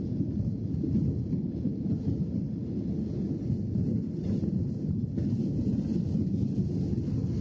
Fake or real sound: real